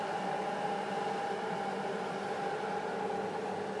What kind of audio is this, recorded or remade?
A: recorded